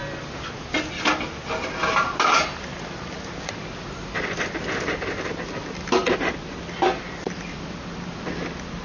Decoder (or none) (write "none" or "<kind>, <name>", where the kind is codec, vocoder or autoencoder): none